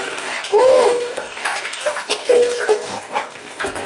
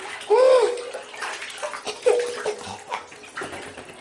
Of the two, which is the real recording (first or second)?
second